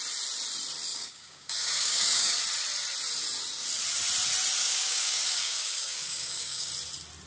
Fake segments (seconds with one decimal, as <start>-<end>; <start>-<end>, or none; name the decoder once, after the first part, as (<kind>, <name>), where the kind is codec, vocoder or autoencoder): 0.9-2.4 (codec, DAC); 4.6-6.7